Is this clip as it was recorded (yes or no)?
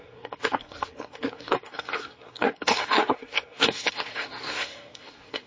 no